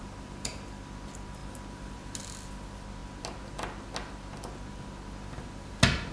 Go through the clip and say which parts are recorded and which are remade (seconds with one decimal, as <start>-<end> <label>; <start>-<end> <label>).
0.0-6.1 recorded